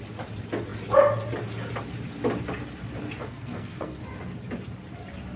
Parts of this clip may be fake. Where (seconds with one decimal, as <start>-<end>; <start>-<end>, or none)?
3.2-4.0